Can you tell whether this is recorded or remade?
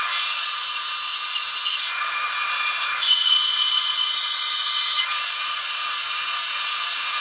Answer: remade